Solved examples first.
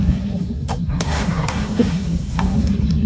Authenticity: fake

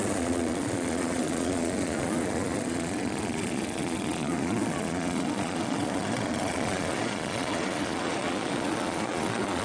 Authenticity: fake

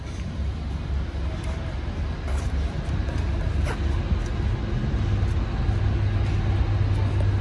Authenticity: real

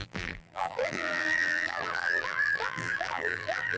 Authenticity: fake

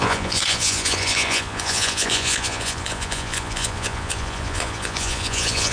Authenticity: fake